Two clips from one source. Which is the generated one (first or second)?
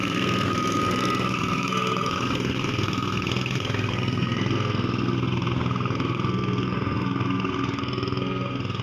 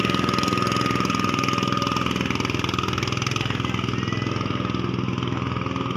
first